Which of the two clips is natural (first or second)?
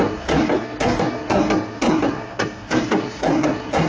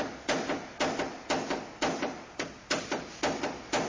second